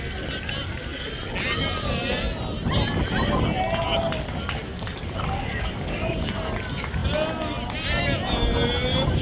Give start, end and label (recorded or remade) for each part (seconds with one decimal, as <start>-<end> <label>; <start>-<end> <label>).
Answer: 0.0-4.7 recorded; 4.7-6.3 remade; 6.3-9.2 recorded